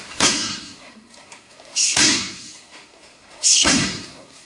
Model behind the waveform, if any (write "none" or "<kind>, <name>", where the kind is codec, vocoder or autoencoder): codec, SNAC